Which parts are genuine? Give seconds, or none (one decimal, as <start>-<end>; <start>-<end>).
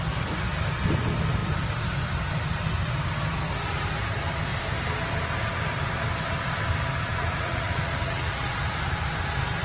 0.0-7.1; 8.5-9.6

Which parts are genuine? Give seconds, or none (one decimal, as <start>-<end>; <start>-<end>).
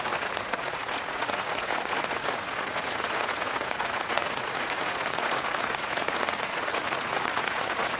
none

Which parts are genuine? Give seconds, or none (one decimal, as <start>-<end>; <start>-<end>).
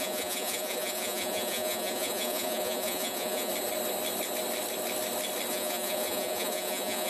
3.5-5.5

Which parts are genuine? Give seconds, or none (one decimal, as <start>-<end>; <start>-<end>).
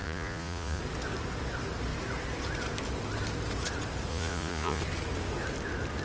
0.8-4.1; 4.8-6.0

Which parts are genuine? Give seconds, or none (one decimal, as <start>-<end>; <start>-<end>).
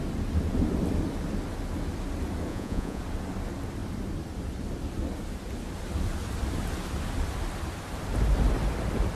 0.0-2.5; 3.0-9.2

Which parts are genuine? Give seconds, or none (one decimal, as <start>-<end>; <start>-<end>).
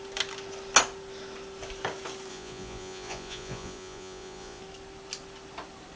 0.0-2.3; 4.6-6.0